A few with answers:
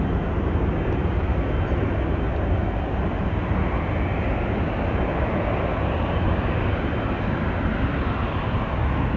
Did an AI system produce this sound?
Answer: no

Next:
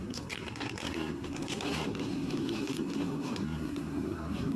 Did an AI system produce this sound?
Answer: yes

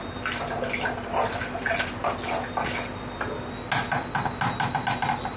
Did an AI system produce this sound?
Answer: no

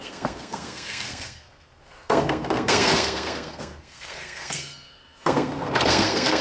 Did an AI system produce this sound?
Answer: yes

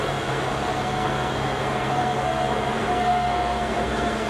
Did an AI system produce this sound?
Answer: yes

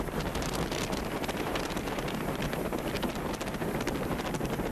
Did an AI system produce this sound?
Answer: no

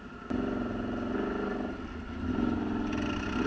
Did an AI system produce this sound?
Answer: no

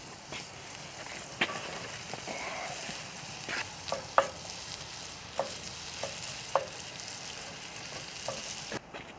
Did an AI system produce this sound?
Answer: no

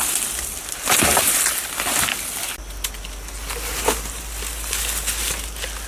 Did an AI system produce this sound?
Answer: no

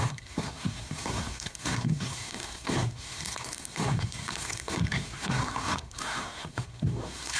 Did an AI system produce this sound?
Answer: yes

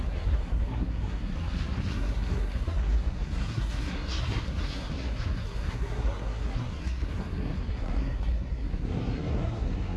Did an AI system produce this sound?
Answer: yes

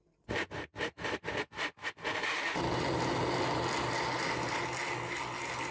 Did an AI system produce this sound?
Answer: no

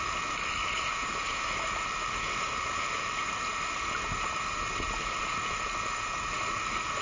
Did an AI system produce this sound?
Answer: no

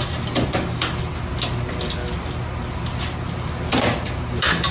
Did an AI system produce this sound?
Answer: no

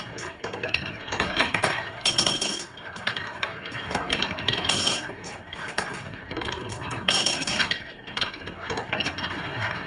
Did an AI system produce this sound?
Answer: yes